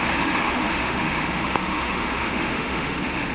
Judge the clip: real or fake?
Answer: fake